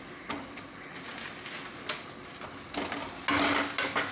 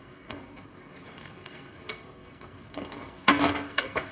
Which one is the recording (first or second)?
first